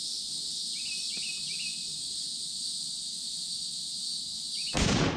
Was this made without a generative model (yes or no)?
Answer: yes